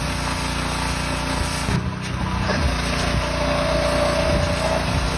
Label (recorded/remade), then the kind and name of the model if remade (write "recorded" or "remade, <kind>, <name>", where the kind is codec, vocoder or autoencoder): recorded